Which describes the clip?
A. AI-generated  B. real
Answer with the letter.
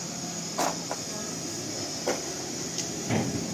B